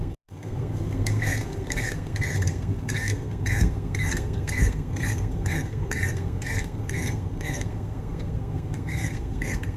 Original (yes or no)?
no